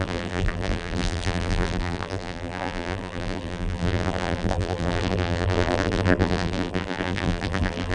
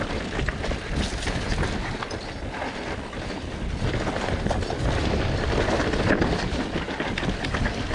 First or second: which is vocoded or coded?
first